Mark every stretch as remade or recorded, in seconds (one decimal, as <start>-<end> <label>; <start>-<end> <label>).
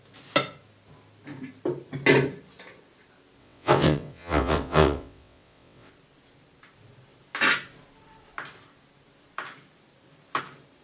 0.0-3.4 recorded; 3.4-5.9 remade; 5.9-10.8 recorded